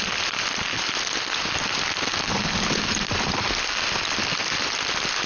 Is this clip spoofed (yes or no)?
no